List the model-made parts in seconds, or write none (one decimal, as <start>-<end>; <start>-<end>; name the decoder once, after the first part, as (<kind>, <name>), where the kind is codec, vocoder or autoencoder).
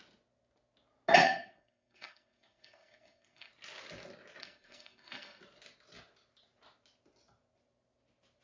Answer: 1.2-3.5 (codec, SNAC); 4.4-5.4